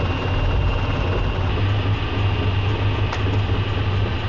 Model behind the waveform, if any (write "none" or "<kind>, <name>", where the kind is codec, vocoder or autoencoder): none